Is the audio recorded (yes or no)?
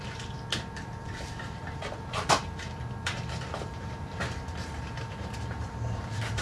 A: no